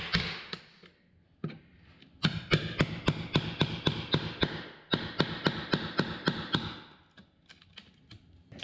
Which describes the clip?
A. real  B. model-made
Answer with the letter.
A